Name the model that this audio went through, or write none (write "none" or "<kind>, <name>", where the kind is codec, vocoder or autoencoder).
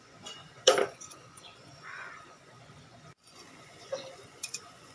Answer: vocoder, Vocos